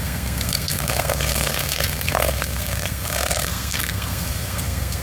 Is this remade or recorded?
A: remade